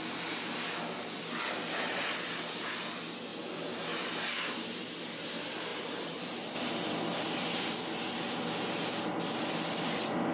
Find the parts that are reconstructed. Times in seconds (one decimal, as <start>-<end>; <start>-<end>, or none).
none